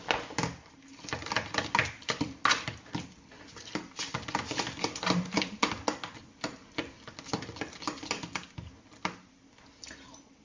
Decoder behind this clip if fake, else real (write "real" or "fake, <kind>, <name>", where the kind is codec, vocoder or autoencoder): real